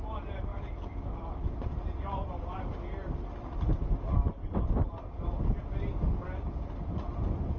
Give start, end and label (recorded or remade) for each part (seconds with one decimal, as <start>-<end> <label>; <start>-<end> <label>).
0.0-0.5 recorded; 0.5-1.6 remade; 1.6-7.6 recorded